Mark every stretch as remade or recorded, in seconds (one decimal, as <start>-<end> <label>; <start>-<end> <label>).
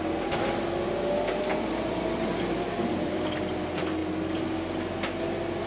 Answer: 0.0-1.5 recorded; 1.5-3.4 remade; 3.4-5.7 recorded